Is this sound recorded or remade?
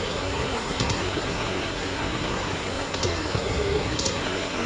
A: remade